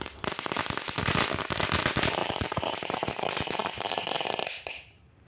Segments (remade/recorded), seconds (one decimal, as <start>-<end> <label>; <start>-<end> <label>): 0.0-2.2 recorded; 2.2-3.9 remade; 3.9-5.3 recorded